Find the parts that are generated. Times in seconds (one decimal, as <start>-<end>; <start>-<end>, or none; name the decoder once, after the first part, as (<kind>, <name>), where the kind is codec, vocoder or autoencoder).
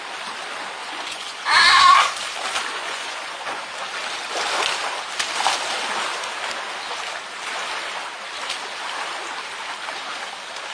0.8-1.8 (vocoder, Vocos); 2.8-3.6